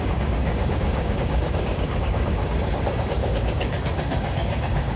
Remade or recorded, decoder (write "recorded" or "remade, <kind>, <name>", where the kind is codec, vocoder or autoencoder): remade, codec, DAC